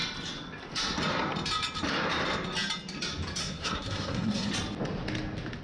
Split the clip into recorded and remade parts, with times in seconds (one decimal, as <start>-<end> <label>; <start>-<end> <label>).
0.0-3.4 recorded; 3.4-4.5 remade; 4.5-5.6 recorded